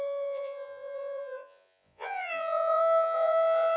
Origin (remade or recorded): remade